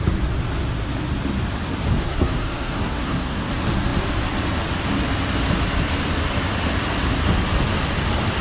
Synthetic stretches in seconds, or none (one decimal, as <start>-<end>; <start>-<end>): 1.9-3.5